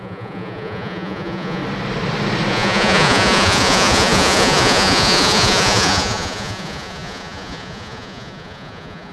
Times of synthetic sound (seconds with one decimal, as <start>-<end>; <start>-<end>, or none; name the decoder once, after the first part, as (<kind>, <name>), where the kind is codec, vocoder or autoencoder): 0.0-1.6 (vocoder, Vocos); 2.5-9.1